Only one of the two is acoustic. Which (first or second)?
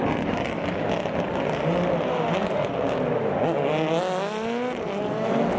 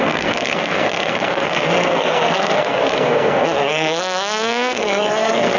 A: first